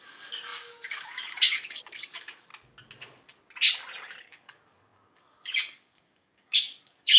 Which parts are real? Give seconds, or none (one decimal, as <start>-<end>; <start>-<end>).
2.5-4.2

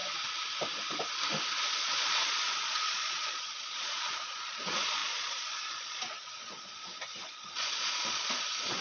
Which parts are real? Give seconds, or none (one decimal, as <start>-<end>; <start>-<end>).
0.0-1.8

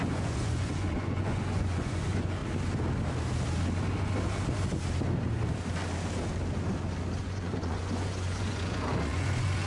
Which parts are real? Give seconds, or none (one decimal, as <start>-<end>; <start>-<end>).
2.4-7.2

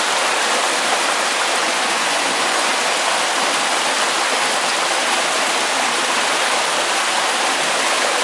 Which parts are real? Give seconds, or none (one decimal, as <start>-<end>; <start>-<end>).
0.0-1.6; 2.7-8.2

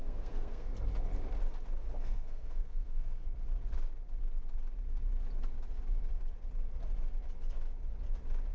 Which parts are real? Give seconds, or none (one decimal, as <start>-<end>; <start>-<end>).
0.7-2.0; 3.2-8.5

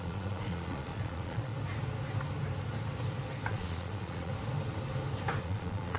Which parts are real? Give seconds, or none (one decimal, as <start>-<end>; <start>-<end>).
1.5-3.5; 4.3-5.4

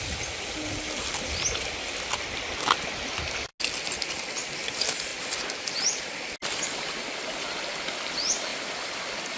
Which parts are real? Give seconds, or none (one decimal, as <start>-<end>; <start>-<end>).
0.0-9.4